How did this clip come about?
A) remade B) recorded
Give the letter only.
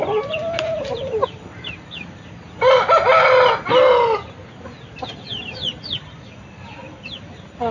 B